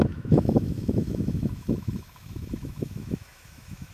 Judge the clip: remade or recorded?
remade